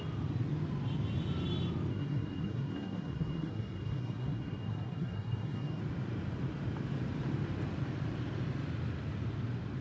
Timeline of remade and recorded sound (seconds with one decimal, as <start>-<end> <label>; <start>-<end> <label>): 0.0-1.9 recorded; 1.9-5.8 remade; 5.8-9.8 recorded

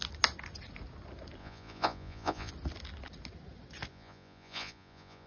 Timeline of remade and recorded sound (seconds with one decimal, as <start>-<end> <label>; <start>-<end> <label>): 0.0-1.4 recorded; 1.4-2.5 remade; 2.5-3.9 recorded; 3.9-5.3 remade

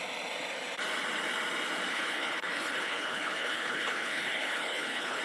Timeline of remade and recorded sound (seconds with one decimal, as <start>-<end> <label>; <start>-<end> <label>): 0.0-1.9 recorded; 1.9-5.2 remade

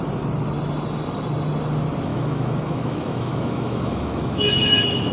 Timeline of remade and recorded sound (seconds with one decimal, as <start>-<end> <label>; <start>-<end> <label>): 0.0-2.1 recorded; 2.1-5.1 remade

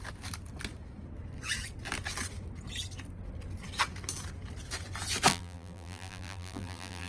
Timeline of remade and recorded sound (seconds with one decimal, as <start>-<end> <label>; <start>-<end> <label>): 0.0-5.3 recorded; 5.3-7.1 remade

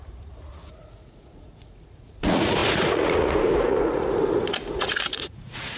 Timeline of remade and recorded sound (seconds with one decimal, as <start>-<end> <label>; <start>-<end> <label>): 0.0-5.8 remade

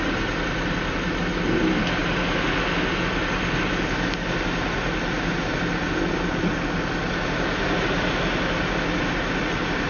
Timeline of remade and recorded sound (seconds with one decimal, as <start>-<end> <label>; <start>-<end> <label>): 0.0-9.9 recorded